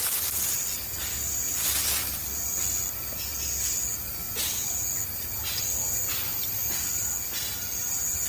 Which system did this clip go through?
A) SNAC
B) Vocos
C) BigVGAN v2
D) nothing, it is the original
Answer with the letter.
D